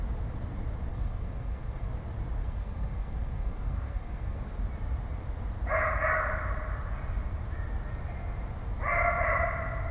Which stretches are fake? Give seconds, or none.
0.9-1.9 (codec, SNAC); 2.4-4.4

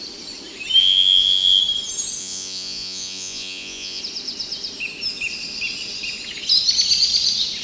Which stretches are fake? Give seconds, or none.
0.8-1.6 (vocoder, Vocos); 2.2-4.0

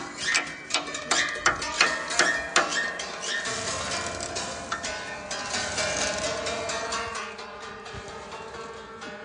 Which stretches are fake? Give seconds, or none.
2.7-3.4 (vocoder, BigVGAN v2)